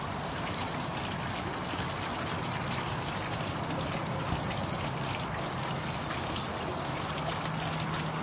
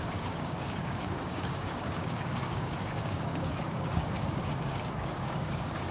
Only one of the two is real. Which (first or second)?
first